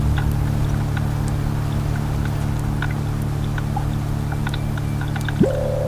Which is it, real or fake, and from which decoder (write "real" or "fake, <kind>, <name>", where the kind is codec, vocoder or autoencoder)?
real